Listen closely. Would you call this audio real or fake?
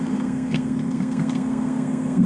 fake